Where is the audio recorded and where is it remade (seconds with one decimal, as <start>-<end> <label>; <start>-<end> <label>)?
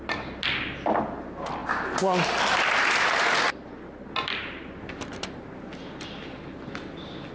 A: 0.0-7.3 recorded